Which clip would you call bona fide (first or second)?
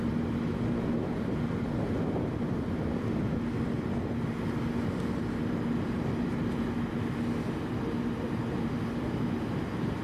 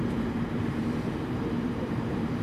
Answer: first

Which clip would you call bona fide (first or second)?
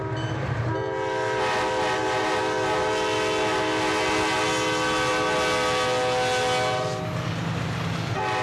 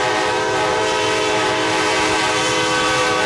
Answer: first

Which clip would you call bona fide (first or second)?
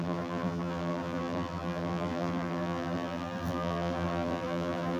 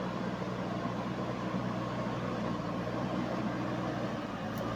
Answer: second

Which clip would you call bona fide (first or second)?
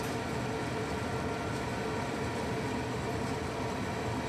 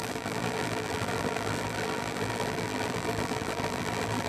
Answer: first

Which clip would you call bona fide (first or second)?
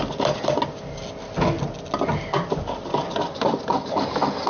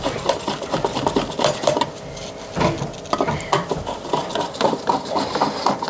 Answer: first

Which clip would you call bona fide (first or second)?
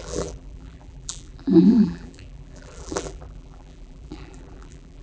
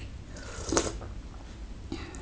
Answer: second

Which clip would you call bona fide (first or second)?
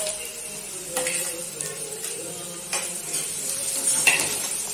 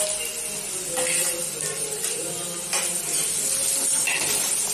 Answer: second